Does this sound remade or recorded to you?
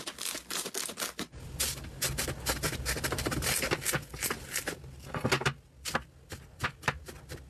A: recorded